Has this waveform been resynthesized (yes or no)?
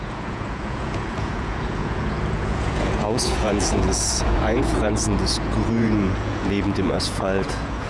yes